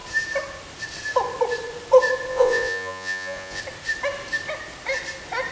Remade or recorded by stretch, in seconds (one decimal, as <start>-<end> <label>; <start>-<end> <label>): 0.0-2.3 recorded; 2.3-3.6 remade; 3.6-5.5 recorded